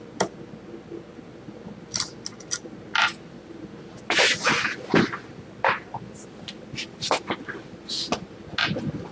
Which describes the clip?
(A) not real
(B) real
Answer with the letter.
B